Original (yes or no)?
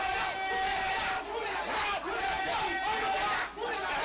yes